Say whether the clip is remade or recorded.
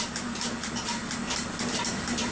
recorded